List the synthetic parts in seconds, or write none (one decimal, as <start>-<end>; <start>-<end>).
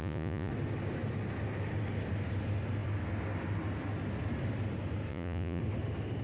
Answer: 0.0-0.5; 5.1-5.6